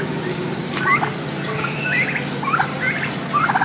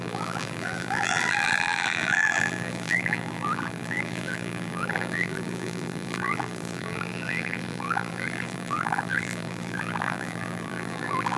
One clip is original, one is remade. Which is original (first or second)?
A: first